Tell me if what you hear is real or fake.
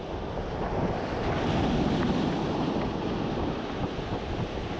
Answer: real